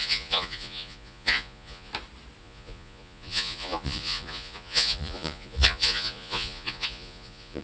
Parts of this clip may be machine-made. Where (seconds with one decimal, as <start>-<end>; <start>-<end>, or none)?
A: 0.0-1.9; 2.4-7.6